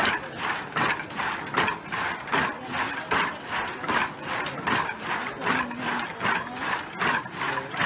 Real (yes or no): yes